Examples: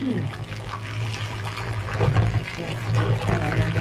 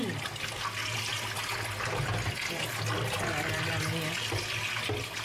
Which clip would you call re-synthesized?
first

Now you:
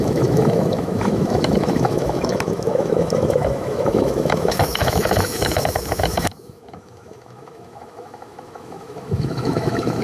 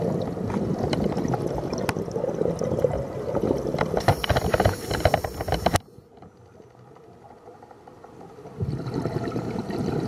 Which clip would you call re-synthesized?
first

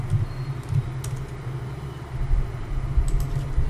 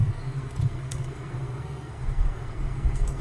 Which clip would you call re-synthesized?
second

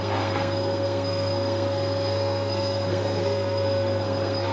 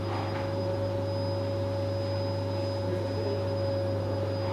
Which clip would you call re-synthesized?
first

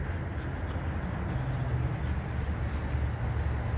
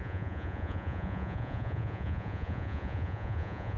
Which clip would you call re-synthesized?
second